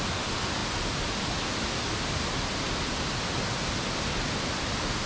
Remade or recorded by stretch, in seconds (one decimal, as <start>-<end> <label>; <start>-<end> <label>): 0.0-5.1 recorded